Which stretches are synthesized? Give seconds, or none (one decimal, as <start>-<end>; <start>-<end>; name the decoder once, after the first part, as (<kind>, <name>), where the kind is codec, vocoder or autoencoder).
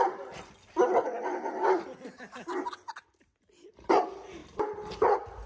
none